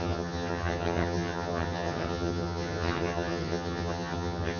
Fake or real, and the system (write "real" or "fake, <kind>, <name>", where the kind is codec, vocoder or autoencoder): fake, vocoder, HiFi-GAN